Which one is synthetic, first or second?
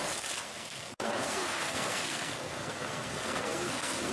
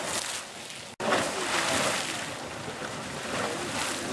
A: first